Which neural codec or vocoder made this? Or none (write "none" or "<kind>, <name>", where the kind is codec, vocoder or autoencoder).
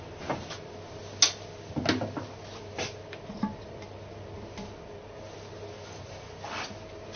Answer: none